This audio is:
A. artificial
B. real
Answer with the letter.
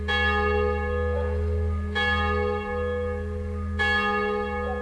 B